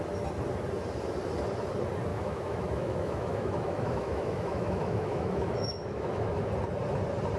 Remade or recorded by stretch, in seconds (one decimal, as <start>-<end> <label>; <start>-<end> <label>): 0.0-2.1 recorded; 2.1-6.5 remade; 6.5-7.4 recorded